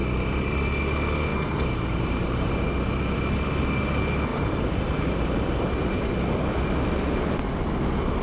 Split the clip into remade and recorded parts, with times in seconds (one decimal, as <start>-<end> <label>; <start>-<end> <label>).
0.0-0.5 remade; 0.5-1.3 recorded; 1.3-2.5 remade; 2.5-4.3 recorded; 4.3-5.2 remade; 5.2-8.2 recorded

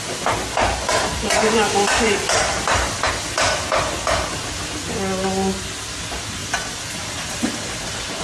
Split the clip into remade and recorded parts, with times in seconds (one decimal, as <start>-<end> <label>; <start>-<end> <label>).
0.0-1.1 recorded; 1.1-3.1 remade; 3.1-6.4 recorded; 6.4-8.2 remade

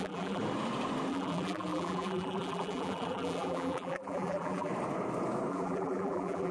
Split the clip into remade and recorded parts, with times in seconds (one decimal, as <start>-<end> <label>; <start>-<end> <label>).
0.0-0.4 remade; 0.4-1.1 recorded; 1.1-4.7 remade; 4.7-5.5 recorded; 5.5-6.5 remade

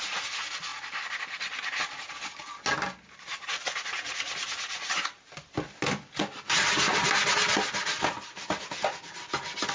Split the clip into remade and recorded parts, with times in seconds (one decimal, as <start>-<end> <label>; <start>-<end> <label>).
0.0-0.7 recorded; 0.7-2.0 remade; 2.0-3.3 recorded; 3.3-6.2 remade; 6.2-9.7 recorded

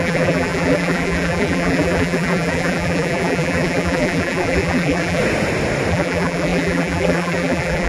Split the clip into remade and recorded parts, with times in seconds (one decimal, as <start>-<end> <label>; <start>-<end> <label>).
0.0-5.2 remade; 5.2-5.9 recorded; 5.9-7.9 remade

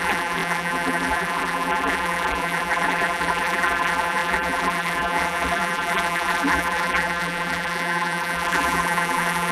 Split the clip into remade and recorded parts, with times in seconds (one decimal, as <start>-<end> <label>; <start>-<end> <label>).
0.0-9.5 remade

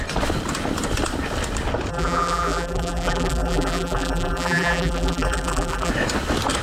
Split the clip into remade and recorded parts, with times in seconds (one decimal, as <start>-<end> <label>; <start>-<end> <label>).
0.0-1.9 recorded; 1.9-5.9 remade; 5.9-6.6 recorded

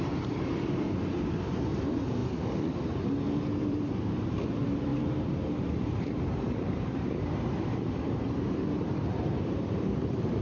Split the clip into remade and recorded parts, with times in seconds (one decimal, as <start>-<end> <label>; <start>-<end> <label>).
0.0-2.2 remade; 2.2-3.6 recorded; 3.6-10.4 remade